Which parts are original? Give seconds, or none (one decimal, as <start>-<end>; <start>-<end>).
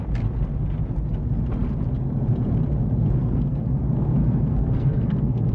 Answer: 0.0-3.2; 3.8-4.2